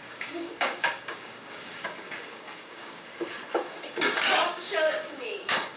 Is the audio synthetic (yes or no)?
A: yes